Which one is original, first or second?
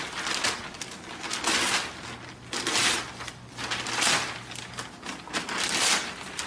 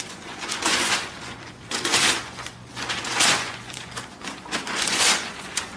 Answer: first